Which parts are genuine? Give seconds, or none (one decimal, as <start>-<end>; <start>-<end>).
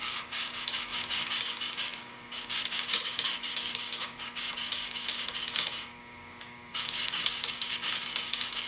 none